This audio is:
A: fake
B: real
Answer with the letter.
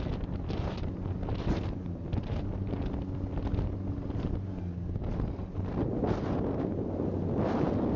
B